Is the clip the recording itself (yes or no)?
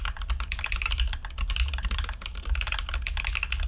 yes